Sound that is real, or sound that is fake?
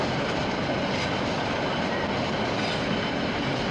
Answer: real